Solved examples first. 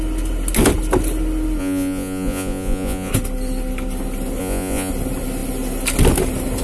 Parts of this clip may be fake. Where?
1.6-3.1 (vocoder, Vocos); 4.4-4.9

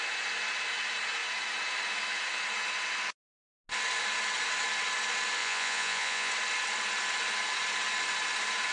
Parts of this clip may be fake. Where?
5.4-6.3 (vocoder, Vocos)

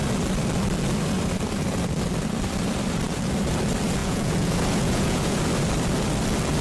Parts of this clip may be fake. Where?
4.0-5.4 (vocoder, Vocos)

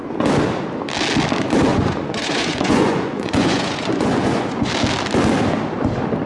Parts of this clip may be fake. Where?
1.7-4.7 (vocoder, Vocos)